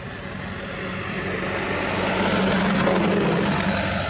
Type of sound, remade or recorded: recorded